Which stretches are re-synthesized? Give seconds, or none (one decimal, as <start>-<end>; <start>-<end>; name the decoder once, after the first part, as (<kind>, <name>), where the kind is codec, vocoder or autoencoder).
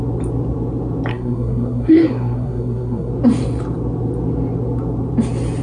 1.1-3.1 (codec, SNAC)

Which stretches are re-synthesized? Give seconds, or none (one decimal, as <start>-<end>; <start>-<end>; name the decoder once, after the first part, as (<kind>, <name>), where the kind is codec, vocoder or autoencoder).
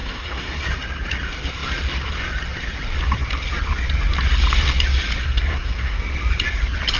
0.0-0.6 (codec, SNAC); 5.2-6.0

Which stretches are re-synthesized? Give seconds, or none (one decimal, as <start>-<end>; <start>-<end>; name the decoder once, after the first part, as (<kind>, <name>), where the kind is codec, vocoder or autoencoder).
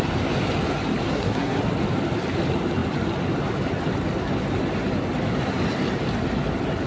1.1-1.6 (codec, SNAC)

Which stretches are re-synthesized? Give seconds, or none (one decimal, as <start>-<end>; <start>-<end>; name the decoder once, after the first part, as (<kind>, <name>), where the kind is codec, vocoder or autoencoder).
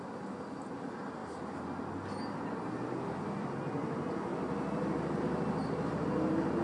none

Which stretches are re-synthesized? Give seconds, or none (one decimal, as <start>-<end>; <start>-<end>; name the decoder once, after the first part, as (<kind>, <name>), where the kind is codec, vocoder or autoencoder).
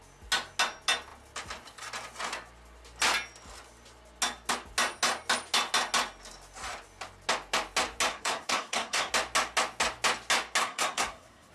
8.1-9.1 (codec, SNAC); 10.6-11.5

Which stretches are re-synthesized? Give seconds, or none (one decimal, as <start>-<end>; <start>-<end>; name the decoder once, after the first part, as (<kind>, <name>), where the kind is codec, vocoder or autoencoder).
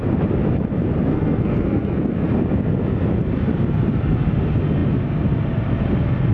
1.1-2.3 (codec, SNAC)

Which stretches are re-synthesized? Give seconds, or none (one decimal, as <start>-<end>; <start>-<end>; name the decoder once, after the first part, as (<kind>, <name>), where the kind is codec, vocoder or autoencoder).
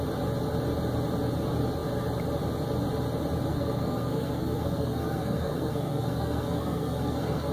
3.5-7.5 (codec, SNAC)